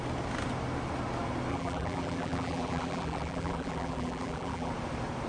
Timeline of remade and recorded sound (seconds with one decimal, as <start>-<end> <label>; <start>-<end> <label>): 0.0-1.5 recorded; 1.5-4.7 remade; 4.7-5.3 recorded